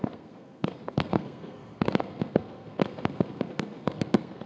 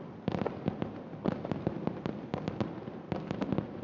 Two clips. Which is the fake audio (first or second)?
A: first